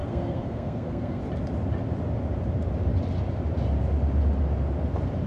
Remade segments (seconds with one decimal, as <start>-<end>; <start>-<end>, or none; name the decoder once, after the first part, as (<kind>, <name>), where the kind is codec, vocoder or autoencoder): 0.0-1.2 (codec, SNAC)